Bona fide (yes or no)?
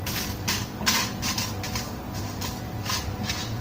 yes